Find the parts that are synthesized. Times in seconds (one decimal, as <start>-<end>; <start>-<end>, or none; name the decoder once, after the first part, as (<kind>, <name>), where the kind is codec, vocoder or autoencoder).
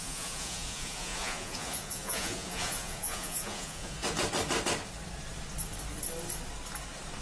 0.0-4.0 (vocoder, Vocos)